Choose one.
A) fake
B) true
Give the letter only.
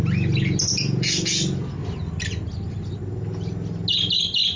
B